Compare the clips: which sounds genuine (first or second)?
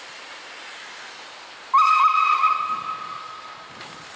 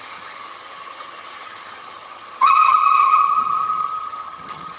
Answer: first